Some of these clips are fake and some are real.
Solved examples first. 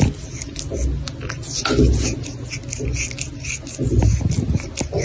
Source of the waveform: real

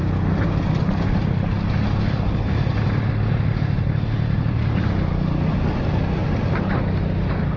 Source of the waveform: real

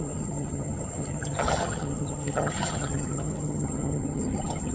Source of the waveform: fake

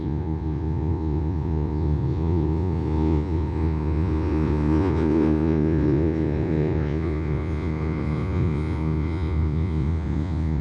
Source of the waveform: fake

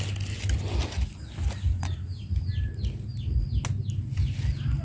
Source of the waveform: real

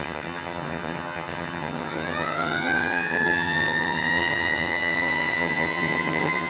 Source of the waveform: fake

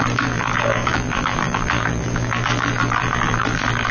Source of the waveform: fake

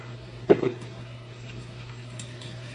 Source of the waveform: fake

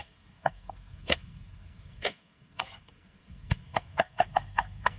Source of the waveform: fake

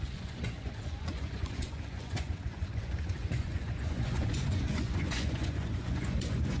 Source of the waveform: fake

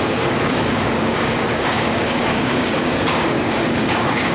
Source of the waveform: fake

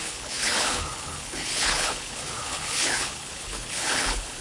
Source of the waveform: fake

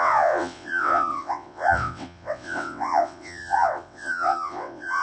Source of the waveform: fake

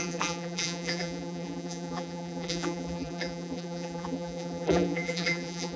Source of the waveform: fake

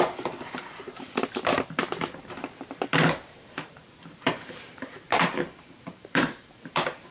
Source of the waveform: fake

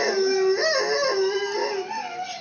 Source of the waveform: real